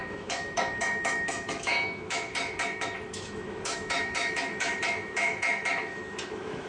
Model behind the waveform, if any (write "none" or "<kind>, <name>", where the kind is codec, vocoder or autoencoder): autoencoder, DAC-VAE